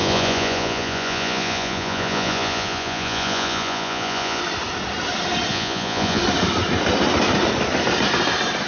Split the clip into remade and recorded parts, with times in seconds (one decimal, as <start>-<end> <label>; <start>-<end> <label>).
0.0-4.4 remade; 4.4-5.5 recorded; 5.5-6.2 remade; 6.2-8.7 recorded